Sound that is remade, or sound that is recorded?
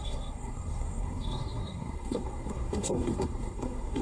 remade